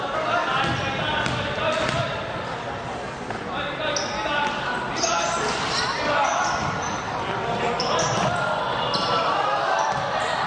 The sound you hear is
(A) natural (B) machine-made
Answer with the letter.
A